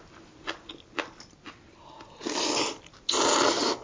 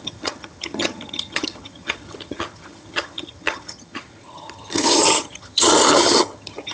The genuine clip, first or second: first